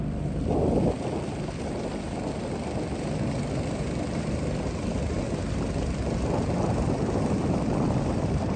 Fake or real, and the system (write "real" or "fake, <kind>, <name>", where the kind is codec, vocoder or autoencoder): real